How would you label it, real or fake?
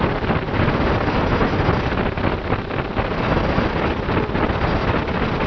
fake